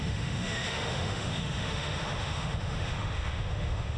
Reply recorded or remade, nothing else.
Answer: remade